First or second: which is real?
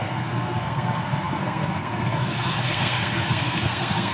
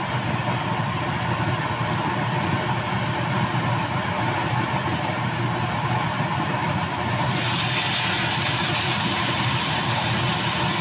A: second